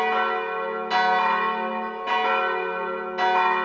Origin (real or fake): real